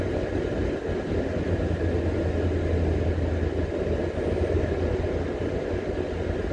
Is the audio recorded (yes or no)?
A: yes